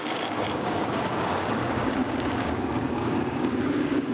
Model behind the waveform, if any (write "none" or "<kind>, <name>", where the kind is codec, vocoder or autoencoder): codec, DAC